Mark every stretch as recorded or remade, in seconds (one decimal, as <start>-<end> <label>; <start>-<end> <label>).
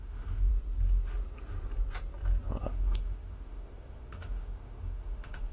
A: 0.0-0.5 remade; 0.5-2.6 recorded; 2.6-5.5 remade